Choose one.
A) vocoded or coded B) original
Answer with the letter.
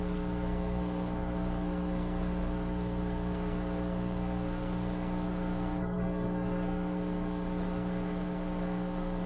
A